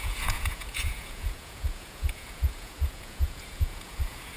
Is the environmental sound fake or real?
fake